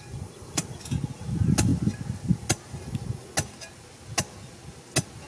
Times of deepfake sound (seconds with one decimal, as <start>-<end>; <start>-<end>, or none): none